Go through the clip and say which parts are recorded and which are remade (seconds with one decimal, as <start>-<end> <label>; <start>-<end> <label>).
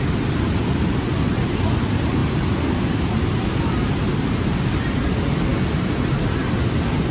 0.0-7.1 recorded